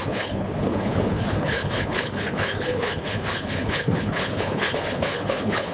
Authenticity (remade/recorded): remade